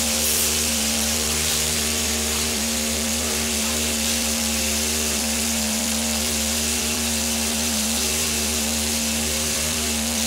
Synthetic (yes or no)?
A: yes